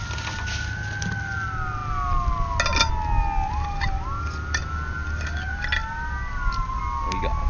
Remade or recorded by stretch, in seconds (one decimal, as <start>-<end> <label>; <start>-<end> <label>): 0.0-7.5 recorded